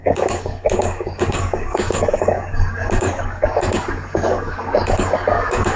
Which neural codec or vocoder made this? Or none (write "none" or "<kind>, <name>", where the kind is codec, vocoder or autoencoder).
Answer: codec, DAC